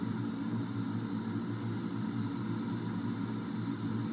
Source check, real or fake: real